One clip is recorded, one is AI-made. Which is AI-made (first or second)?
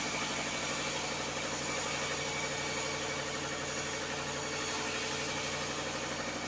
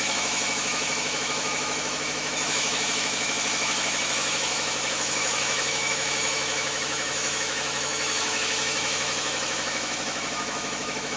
second